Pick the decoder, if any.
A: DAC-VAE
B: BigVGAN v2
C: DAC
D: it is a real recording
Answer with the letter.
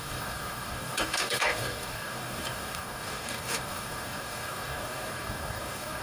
C